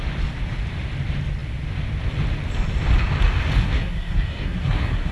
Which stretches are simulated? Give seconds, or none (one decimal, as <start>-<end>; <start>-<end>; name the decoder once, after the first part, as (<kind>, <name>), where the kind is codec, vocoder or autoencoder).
3.6-5.1 (codec, SNAC)